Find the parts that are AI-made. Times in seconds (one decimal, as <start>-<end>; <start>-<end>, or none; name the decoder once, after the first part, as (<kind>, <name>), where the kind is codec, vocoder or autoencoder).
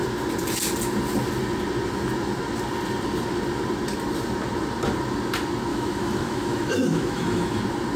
5.7-7.6 (autoencoder, DAC-VAE)